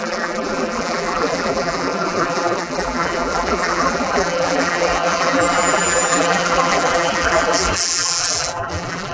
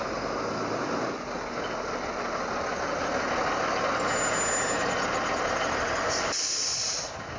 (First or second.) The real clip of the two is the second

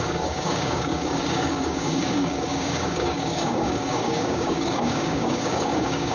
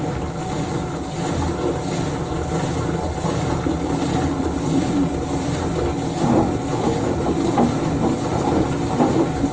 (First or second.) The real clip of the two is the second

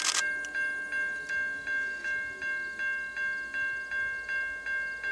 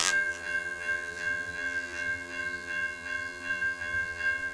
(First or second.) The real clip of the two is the first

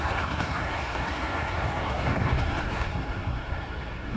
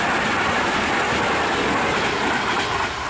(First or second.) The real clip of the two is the second